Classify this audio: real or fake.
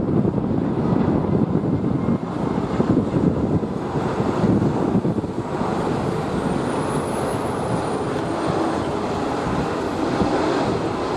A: real